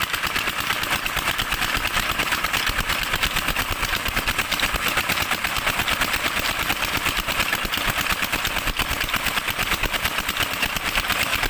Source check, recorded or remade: recorded